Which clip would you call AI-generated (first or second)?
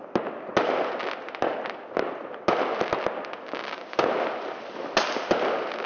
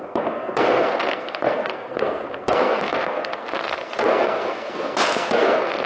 second